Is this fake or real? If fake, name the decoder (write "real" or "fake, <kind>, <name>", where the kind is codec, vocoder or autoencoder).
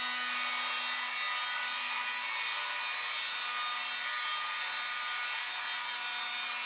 real